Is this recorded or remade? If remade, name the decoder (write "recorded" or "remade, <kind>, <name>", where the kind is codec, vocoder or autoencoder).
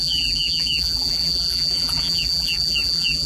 remade, vocoder, BigVGAN v2